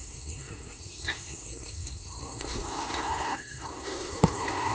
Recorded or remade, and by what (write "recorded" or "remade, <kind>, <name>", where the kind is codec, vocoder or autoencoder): remade, codec, SNAC